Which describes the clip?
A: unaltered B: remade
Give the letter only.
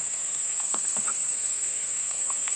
B